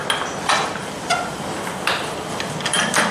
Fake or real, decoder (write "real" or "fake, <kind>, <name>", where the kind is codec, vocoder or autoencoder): real